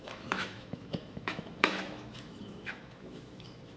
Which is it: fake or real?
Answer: fake